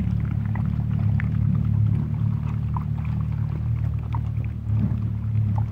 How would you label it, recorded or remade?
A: recorded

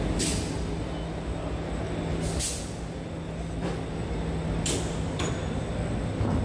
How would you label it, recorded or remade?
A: recorded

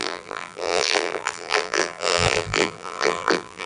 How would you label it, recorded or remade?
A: remade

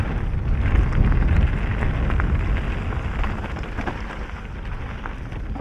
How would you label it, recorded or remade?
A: recorded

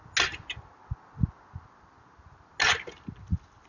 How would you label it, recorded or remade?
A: recorded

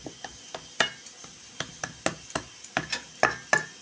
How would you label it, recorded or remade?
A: recorded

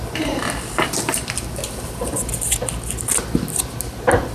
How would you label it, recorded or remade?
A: recorded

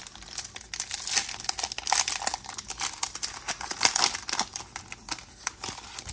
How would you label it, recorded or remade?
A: recorded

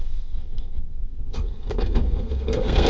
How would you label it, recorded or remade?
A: remade